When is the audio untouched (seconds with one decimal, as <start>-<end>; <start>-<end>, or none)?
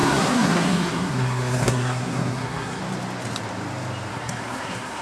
2.8-4.1